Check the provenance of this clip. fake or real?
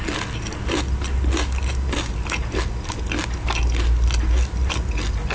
real